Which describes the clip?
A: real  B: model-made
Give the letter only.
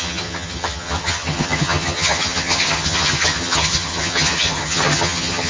B